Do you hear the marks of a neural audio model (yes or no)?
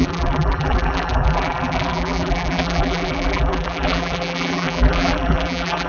yes